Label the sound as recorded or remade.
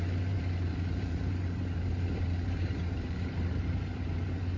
remade